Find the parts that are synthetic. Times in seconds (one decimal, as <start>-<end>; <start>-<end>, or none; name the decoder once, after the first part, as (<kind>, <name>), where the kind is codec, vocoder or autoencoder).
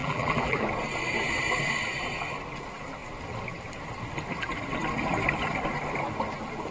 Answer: 0.0-0.6 (vocoder, BigVGAN v2)